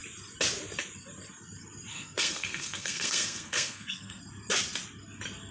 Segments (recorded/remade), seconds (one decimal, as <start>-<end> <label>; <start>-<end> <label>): 0.0-1.9 recorded; 1.9-4.2 remade; 4.2-5.5 recorded